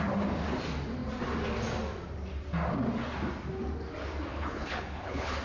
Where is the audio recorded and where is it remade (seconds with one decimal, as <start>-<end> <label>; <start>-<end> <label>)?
0.0-4.3 recorded; 4.3-5.4 remade